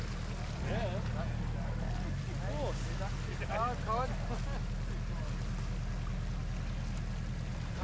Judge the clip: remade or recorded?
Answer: recorded